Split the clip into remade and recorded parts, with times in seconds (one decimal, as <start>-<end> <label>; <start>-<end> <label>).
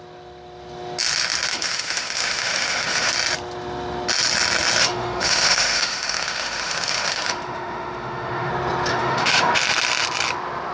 0.0-1.5 recorded; 1.5-3.1 remade; 3.1-4.8 recorded; 4.8-8.5 remade; 8.5-8.9 recorded; 8.9-9.6 remade; 9.6-10.7 recorded